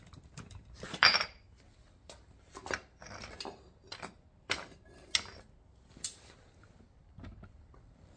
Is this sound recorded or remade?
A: recorded